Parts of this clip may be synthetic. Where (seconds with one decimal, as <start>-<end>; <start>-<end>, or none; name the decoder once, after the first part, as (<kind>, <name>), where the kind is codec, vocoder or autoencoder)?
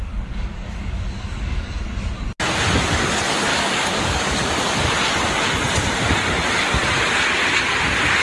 0.0-1.8 (codec, DAC); 3.5-4.5